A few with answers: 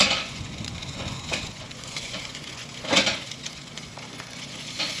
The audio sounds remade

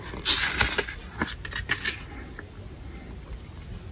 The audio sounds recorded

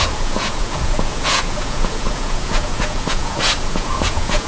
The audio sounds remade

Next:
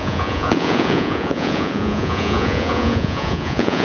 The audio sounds remade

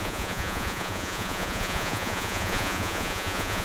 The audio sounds remade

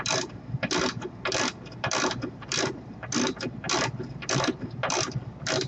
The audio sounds recorded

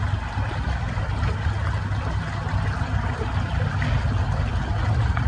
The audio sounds recorded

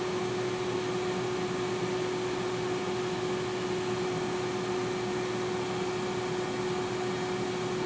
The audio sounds recorded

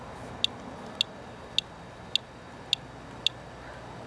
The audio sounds recorded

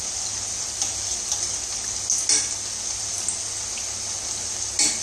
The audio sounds recorded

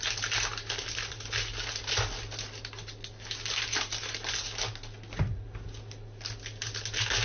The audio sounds recorded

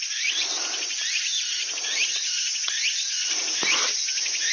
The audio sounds recorded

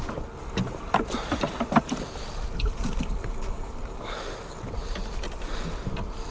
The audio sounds recorded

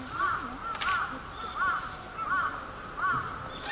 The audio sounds recorded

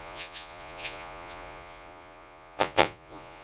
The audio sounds remade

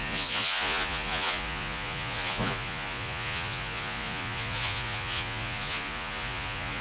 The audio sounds remade